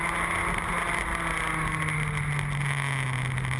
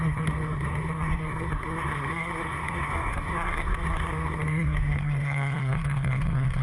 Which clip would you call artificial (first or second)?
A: second